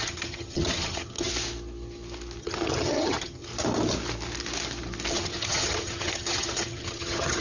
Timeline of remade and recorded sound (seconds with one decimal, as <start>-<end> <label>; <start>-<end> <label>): 0.0-1.3 remade; 1.3-2.4 recorded; 2.4-3.5 remade; 3.5-5.1 recorded; 5.1-7.4 remade